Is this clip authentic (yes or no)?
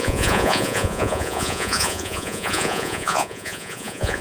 no